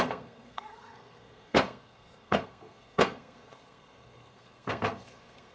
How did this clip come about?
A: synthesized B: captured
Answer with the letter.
A